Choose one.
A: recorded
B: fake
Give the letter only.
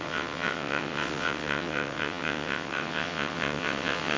B